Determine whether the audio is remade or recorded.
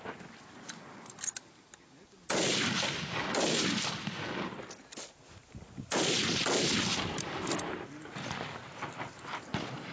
recorded